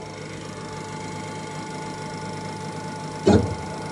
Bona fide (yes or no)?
yes